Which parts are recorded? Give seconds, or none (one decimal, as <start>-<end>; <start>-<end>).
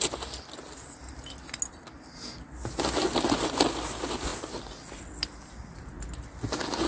0.0-6.9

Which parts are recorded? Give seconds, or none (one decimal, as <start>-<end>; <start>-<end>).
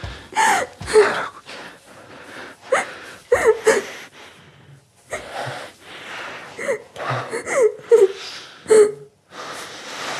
0.0-10.2